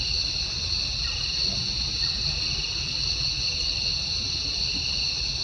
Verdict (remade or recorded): recorded